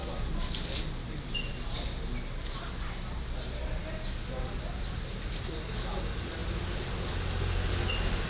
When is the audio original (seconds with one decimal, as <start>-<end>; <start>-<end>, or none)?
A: 0.0-8.3